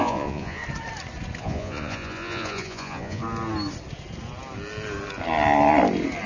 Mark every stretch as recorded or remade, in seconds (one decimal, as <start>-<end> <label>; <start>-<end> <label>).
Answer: 0.0-0.6 remade; 0.6-1.4 recorded; 1.4-3.2 remade; 3.2-6.3 recorded